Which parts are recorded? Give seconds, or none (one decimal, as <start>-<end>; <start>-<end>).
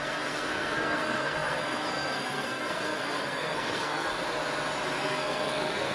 4.1-5.0